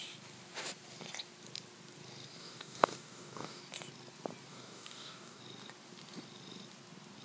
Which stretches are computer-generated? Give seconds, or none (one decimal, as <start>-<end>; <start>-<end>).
2.4-3.6; 4.5-5.4